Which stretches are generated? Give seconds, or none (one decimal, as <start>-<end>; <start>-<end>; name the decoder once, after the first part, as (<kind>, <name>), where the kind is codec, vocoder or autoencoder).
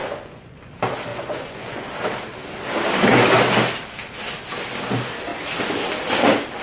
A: 0.0-0.7 (vocoder, Vocos); 1.1-1.9